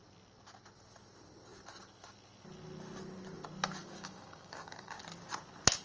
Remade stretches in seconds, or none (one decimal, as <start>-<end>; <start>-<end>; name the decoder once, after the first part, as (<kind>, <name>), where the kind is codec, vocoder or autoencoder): 3.8-5.0 (codec, DAC)